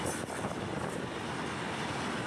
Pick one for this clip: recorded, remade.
recorded